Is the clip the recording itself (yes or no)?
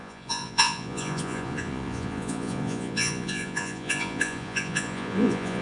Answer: no